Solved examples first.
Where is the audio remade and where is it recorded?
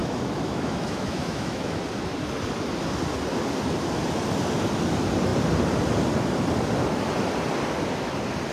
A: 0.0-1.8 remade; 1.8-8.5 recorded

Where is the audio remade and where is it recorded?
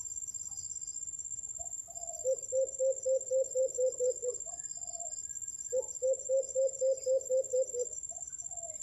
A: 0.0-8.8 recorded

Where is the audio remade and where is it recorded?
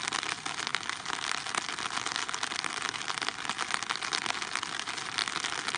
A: 0.0-5.8 recorded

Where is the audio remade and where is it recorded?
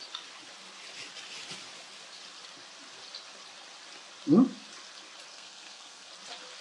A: 0.0-5.3 recorded; 5.3-6.1 remade; 6.1-6.6 recorded